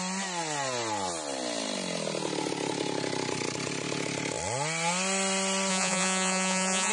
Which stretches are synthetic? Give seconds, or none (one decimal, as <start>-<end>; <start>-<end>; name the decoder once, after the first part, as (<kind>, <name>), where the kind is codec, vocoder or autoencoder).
5.7-6.9 (vocoder, Vocos)